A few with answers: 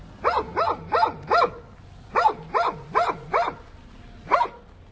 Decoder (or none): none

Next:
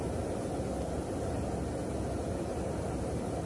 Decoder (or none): none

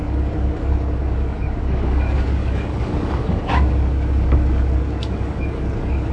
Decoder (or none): codec, DAC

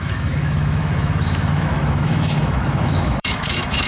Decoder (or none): autoencoder, DAC-VAE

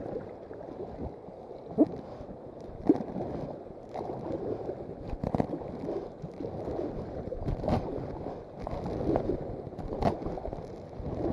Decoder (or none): none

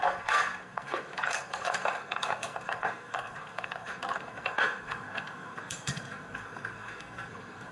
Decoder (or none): codec, SNAC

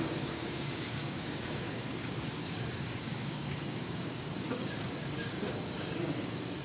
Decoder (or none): codec, DAC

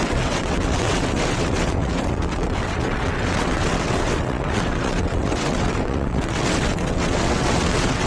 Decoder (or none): vocoder, WaveNeXt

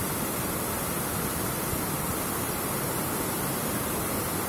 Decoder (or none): none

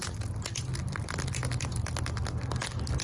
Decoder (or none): none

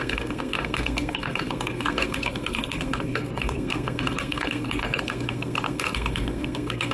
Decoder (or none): codec, SNAC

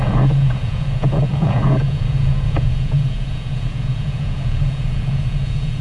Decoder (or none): vocoder, Vocos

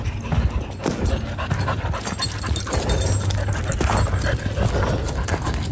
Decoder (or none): none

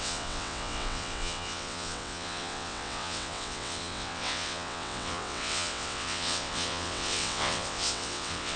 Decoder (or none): vocoder, WaveNeXt